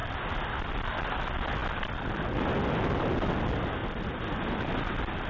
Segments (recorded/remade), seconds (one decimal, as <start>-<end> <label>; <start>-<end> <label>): 0.0-1.6 recorded; 1.6-2.5 remade; 2.5-3.8 recorded; 3.8-4.4 remade; 4.4-5.3 recorded

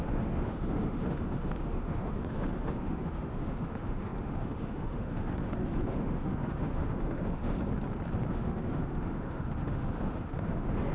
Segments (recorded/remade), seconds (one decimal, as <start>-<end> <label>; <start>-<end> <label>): 0.0-7.6 remade; 7.6-8.3 recorded; 8.3-10.9 remade

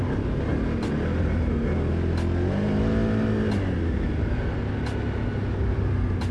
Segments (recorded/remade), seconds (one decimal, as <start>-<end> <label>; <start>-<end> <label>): 0.0-6.3 recorded